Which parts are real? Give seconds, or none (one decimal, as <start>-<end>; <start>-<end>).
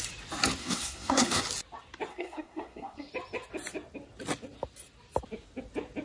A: 0.0-0.6; 1.4-2.1; 3.1-6.0